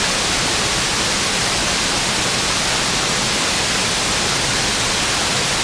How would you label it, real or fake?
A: real